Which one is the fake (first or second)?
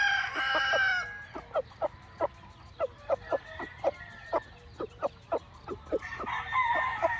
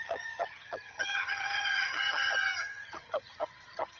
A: second